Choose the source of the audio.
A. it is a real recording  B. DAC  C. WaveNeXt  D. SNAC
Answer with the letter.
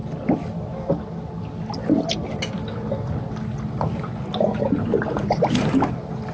A